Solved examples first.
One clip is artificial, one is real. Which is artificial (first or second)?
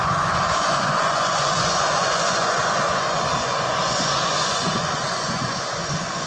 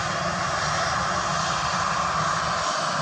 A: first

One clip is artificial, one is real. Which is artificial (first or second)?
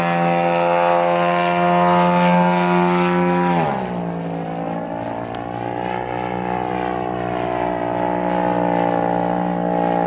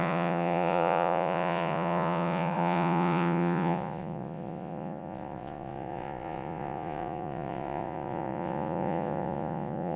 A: second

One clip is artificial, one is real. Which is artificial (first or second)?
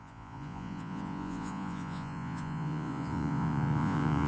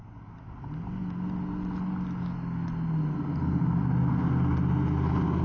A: first